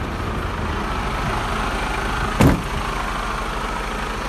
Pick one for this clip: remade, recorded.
recorded